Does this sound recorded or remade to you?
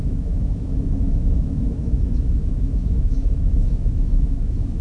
remade